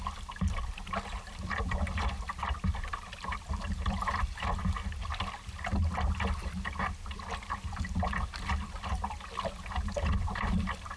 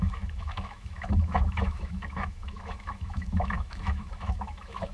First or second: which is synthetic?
second